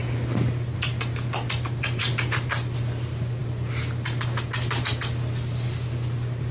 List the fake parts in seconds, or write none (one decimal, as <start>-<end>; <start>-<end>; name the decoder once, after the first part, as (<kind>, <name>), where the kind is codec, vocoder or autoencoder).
none